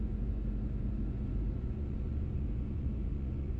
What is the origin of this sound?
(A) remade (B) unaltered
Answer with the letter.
A